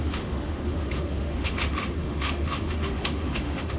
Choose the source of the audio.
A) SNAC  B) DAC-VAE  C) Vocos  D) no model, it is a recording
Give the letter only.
B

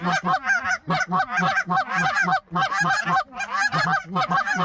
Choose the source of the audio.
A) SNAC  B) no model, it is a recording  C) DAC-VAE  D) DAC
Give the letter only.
B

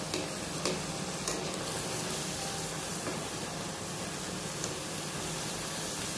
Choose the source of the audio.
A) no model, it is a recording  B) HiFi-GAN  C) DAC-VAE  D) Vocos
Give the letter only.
A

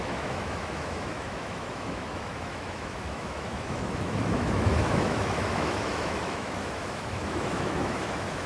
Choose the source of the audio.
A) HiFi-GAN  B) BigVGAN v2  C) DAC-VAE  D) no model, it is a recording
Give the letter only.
C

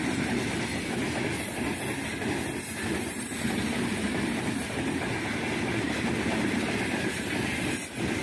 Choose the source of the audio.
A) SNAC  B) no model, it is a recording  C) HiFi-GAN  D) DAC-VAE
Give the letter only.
B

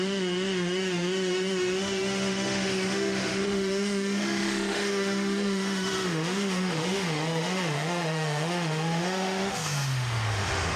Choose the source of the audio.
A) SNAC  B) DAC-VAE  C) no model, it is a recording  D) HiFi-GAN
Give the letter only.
B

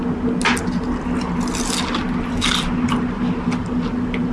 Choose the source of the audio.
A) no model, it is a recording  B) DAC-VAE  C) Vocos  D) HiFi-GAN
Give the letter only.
A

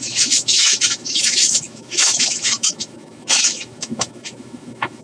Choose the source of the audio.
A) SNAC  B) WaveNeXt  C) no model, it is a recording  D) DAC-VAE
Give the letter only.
D